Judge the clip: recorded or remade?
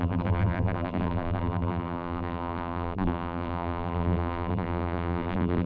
remade